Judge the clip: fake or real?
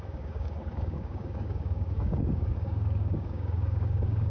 fake